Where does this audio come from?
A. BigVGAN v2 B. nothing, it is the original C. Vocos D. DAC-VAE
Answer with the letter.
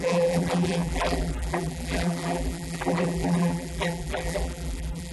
A